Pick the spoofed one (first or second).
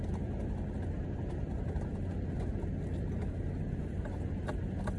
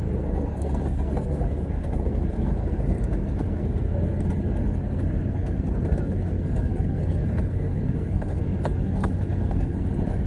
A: second